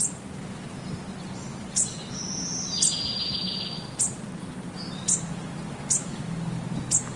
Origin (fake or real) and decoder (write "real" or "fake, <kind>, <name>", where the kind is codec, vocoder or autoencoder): real